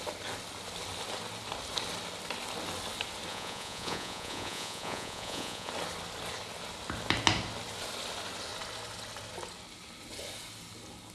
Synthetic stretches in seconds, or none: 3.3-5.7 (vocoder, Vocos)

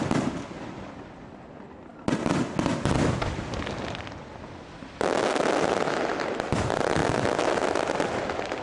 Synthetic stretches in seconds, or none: none

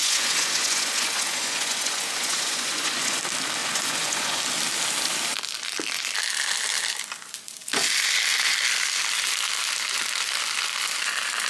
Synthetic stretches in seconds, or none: 0.0-3.2 (vocoder, Vocos); 3.6-4.4

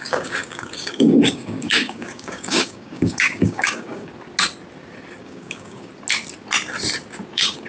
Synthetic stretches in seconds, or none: 0.0-4.1 (codec, DAC); 5.2-5.9; 7.3-7.7

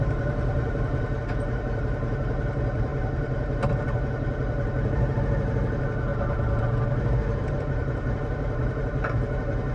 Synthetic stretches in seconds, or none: 0.0-6.1 (vocoder, BigVGAN v2); 7.4-9.7

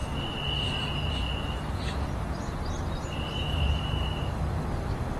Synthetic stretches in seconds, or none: 2.0-5.2 (vocoder, BigVGAN v2)

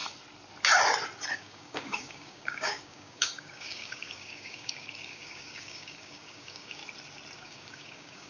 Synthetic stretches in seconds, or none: 1.3-6.8 (codec, DAC); 7.4-8.3